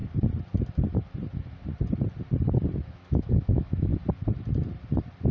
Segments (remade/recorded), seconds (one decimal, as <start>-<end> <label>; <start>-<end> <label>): 0.0-2.9 recorded; 2.9-3.9 remade; 3.9-5.3 recorded